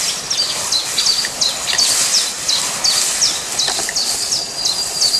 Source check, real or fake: real